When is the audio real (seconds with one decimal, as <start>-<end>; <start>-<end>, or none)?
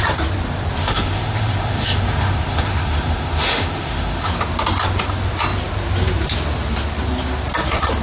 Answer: 0.0-0.8; 4.3-8.0